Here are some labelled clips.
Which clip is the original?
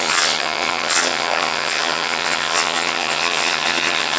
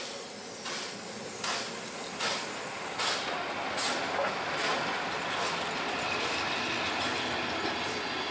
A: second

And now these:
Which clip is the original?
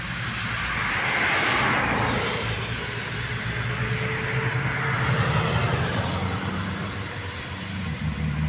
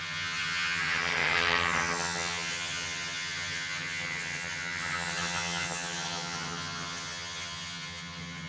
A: first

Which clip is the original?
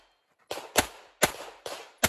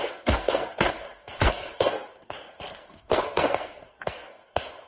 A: first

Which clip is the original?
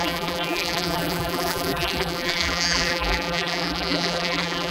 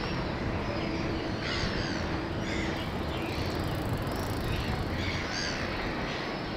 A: second